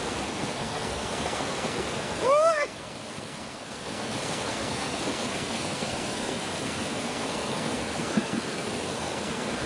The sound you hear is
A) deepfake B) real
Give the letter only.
A